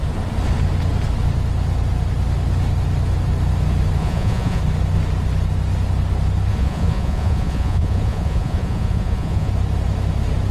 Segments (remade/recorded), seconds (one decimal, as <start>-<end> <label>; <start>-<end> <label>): 0.0-4.0 recorded; 4.0-4.6 remade; 4.6-6.5 recorded; 6.5-9.5 remade; 9.5-10.5 recorded